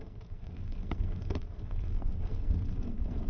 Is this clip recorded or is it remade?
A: remade